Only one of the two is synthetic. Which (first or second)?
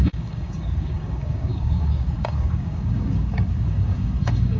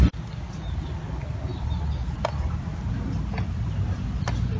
first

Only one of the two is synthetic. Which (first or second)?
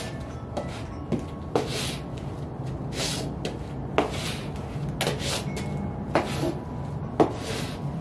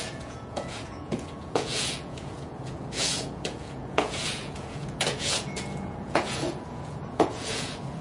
second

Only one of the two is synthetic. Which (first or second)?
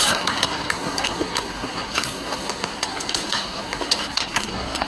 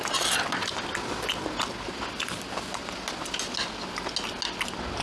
first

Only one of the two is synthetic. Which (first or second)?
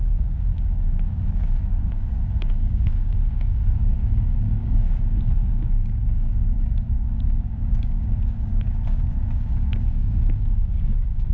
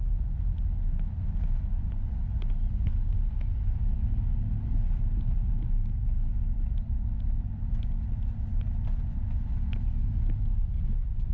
first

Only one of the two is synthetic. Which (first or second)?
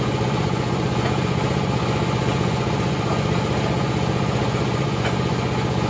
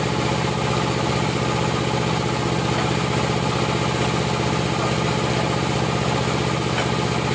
first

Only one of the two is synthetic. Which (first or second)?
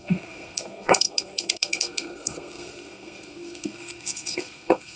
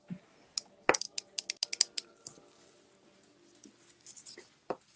first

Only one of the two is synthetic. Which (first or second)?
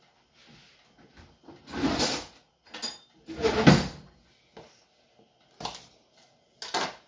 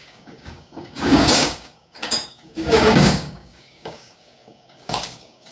second